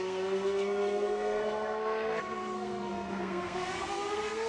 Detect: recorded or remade remade